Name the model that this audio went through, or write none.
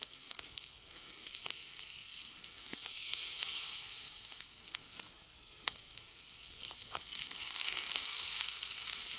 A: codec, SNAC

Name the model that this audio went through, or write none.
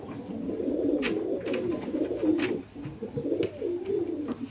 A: none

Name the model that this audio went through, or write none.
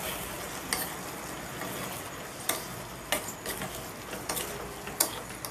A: none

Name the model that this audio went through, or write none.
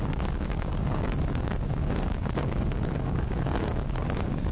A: codec, DAC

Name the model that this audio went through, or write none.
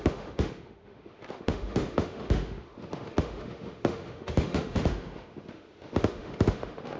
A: autoencoder, DAC-VAE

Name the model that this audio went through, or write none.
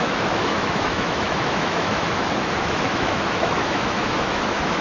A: autoencoder, DAC-VAE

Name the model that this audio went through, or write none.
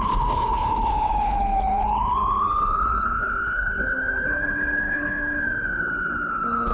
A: codec, HILCodec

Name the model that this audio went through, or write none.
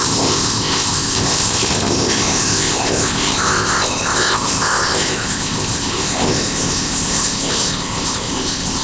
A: codec, ZipCodec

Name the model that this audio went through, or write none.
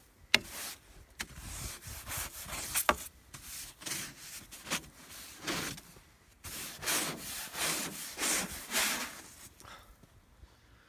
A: none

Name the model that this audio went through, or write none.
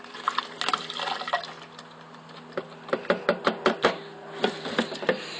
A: none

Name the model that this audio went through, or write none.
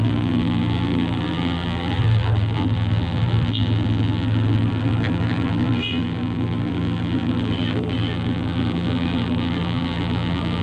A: vocoder, BigVGAN v2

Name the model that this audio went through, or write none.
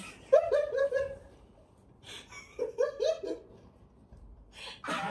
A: vocoder, BigVGAN v2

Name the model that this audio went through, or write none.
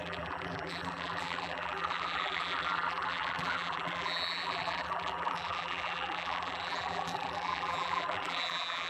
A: vocoder, BigVGAN v2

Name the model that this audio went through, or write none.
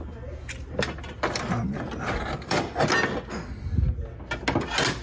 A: none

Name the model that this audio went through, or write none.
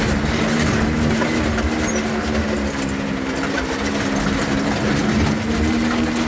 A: none